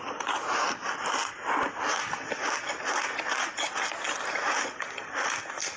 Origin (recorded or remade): recorded